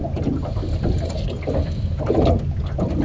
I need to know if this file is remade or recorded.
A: recorded